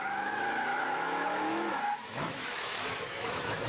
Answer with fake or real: fake